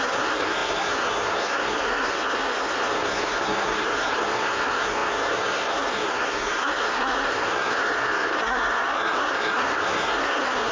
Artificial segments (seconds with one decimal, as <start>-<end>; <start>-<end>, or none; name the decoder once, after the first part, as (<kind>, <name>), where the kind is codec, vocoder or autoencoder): 0.0-10.7 (codec, SNAC)